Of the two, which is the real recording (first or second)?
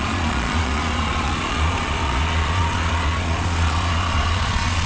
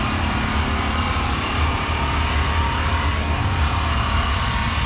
second